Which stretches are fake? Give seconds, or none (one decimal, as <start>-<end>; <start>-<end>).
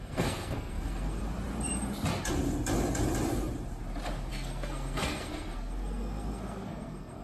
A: 0.0-1.2; 4.3-7.2